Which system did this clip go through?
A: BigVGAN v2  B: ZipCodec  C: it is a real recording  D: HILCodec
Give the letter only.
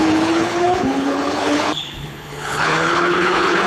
D